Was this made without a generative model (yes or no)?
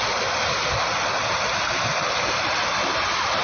yes